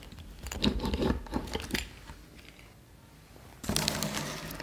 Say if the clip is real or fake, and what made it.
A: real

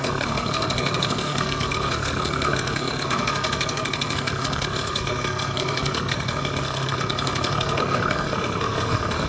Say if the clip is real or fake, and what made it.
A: fake, codec, SNAC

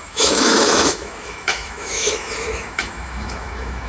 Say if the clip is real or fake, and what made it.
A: fake, autoencoder, DAC-VAE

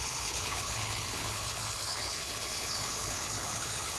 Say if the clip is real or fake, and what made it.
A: fake, codec, HILCodec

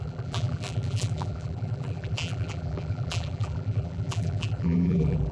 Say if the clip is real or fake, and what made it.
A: fake, vocoder, BigVGAN v2